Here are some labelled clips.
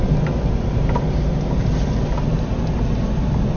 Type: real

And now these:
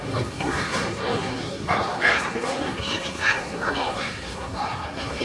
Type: fake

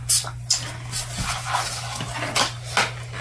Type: real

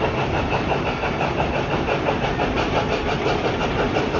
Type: real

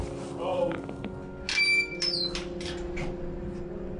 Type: real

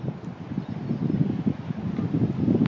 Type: real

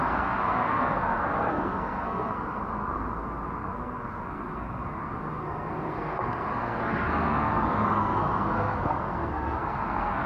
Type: fake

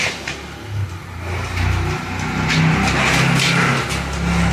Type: real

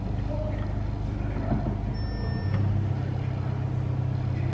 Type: real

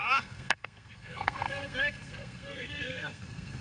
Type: fake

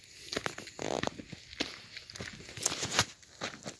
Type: real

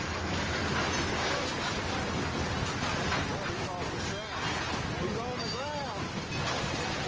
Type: real